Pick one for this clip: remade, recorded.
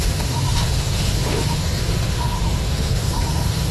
remade